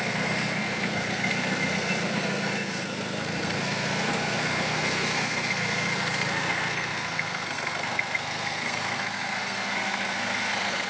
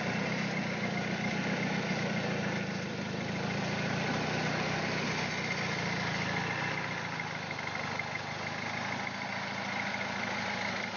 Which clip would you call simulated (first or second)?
first